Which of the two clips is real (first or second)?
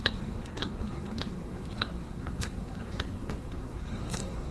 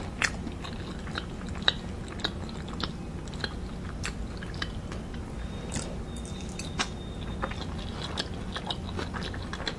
second